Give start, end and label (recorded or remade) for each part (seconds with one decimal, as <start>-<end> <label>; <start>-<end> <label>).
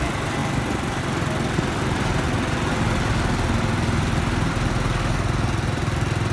0.0-6.3 recorded